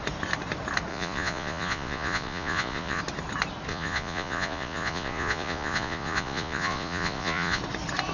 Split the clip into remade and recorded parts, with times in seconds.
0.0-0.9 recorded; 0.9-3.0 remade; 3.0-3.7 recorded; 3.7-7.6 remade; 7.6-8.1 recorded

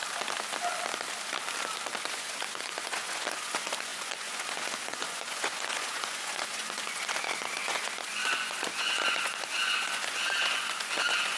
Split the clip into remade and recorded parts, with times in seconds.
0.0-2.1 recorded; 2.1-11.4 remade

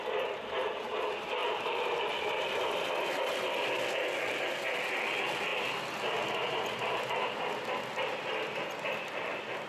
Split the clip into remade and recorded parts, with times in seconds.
0.0-9.7 recorded